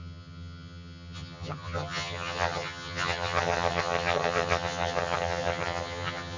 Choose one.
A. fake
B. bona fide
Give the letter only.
A